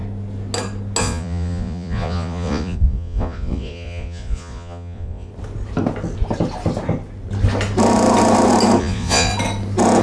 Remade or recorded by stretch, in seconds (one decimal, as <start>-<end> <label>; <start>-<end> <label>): 0.0-1.0 recorded; 1.0-5.3 remade; 5.3-8.8 recorded; 8.8-9.3 remade; 9.3-10.0 recorded